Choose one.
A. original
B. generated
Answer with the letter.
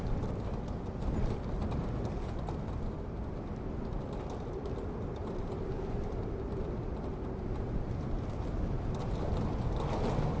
A